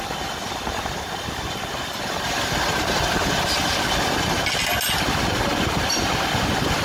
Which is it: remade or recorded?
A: recorded